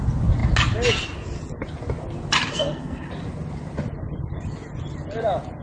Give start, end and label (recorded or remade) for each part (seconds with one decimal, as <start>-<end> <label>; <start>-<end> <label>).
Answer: 0.0-2.5 recorded; 2.5-3.1 remade; 3.1-5.6 recorded